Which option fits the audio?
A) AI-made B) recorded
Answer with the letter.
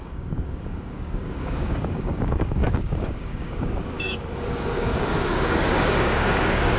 A